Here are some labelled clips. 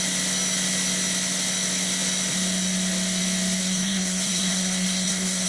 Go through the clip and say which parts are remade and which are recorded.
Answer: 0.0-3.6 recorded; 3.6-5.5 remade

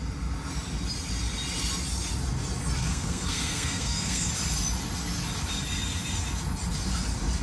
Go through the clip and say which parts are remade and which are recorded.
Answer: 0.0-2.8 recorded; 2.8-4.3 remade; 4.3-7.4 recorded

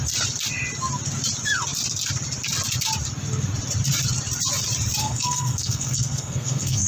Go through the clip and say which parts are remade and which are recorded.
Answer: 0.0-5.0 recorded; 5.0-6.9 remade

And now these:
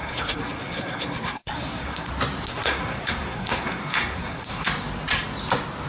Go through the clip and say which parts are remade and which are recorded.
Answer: 0.0-2.1 remade; 2.1-2.5 recorded; 2.5-4.7 remade; 4.7-5.9 recorded

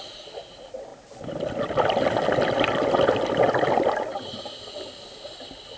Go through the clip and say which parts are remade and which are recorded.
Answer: 0.0-5.8 recorded